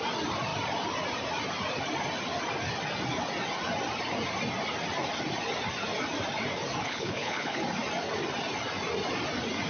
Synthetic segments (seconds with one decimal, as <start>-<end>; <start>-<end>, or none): 6.8-7.6